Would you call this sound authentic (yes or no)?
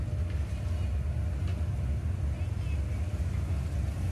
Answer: yes